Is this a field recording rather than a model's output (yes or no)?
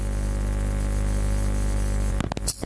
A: yes